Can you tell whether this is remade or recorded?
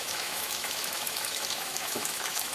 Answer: remade